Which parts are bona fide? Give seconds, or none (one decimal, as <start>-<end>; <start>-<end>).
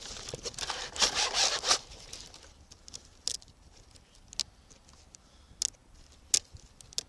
0.0-7.1